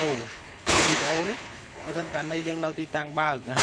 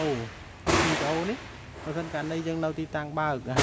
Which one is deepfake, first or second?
first